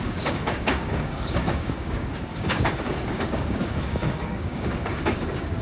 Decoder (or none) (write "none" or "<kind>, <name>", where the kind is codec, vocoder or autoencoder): codec, DAC